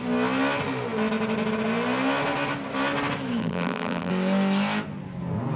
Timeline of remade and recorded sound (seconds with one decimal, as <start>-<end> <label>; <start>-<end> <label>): 0.0-3.4 recorded; 3.4-4.1 remade; 4.1-5.6 recorded